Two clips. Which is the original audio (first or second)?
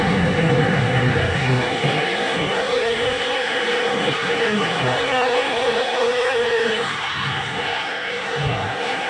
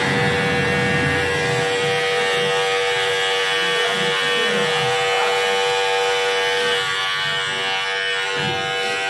second